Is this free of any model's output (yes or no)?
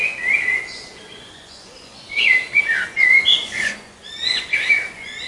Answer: no